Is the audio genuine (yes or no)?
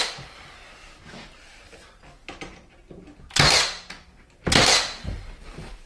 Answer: yes